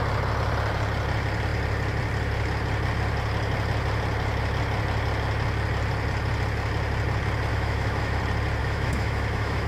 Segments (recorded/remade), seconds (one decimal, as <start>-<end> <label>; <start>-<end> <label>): 0.0-7.5 recorded; 7.5-8.2 remade; 8.2-8.6 recorded; 8.6-9.7 remade

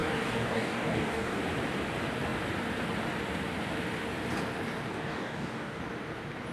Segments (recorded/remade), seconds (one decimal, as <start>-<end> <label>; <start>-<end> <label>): 0.0-1.4 remade; 1.4-4.9 recorded; 4.9-5.8 remade; 5.8-6.5 recorded

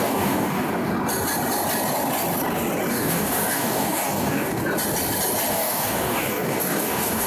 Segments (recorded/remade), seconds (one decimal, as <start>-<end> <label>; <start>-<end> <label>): 0.0-0.9 remade; 0.9-2.9 recorded; 2.9-4.6 remade; 4.6-5.5 recorded; 5.5-7.3 remade

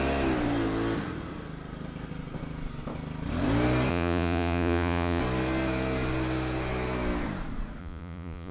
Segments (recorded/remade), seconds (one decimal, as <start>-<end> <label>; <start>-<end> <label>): 0.0-3.9 recorded; 3.9-5.2 remade; 5.2-7.8 recorded; 7.8-8.5 remade

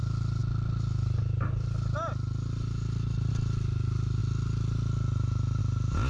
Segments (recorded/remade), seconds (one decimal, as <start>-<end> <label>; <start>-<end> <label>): 0.0-6.1 recorded

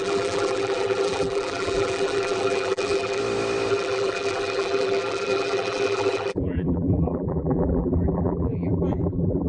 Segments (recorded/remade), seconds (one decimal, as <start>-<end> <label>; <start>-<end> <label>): 0.0-3.2 remade; 3.2-3.7 recorded; 3.7-9.5 remade

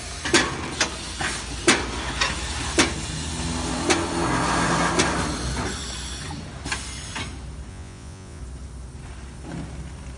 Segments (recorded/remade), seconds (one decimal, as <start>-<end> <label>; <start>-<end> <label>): 0.0-7.7 recorded; 7.7-8.4 remade; 8.4-10.2 recorded